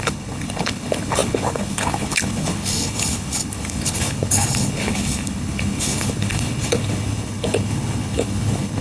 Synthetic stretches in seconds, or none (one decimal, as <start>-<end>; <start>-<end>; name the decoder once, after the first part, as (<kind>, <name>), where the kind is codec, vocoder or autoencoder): 0.0-8.8 (codec, HILCodec)